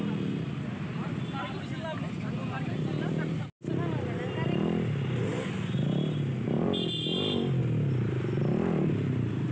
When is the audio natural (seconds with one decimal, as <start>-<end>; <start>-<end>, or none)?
0.0-9.5